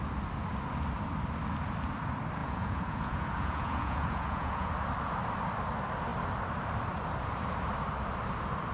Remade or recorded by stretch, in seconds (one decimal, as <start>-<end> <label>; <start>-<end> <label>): 0.0-2.4 recorded; 2.4-4.7 remade; 4.7-8.7 recorded